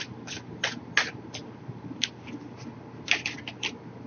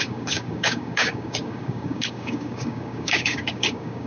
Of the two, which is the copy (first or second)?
second